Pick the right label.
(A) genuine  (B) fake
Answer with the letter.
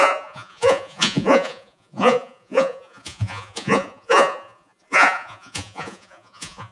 B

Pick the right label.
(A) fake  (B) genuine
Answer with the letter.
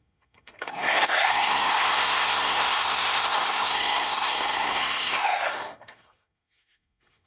A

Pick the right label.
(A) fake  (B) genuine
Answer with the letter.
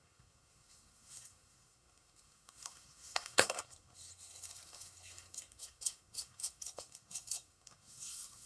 A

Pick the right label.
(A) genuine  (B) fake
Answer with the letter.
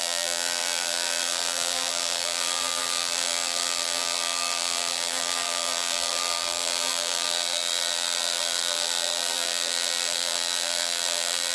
B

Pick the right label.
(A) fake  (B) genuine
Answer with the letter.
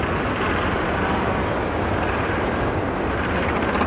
B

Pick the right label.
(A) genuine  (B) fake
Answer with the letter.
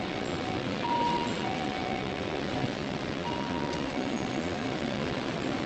B